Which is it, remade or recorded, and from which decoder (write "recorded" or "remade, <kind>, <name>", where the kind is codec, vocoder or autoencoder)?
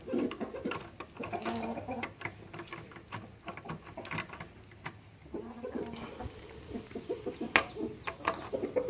recorded